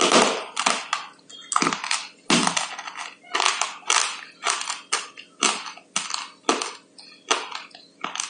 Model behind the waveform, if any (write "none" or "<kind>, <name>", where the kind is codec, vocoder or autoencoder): none